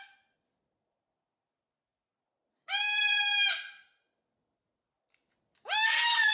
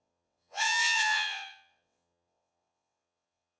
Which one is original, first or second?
first